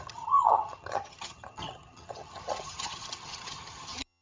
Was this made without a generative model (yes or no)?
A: no